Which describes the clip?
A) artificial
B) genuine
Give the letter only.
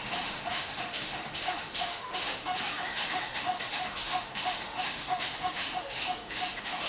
A